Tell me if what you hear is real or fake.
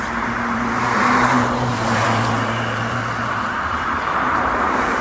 fake